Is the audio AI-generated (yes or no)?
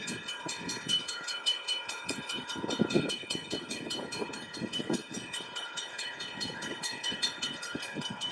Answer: yes